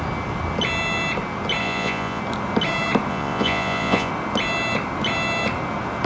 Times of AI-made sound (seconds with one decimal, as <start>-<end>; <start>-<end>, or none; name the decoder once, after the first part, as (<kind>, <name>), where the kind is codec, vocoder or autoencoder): 1.6-2.2 (vocoder, Vocos); 3.1-4.1